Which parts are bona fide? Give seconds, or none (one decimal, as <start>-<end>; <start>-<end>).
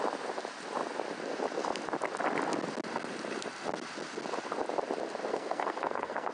0.0-5.3